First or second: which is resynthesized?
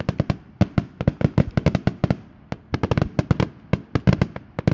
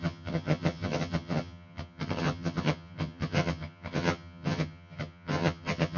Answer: second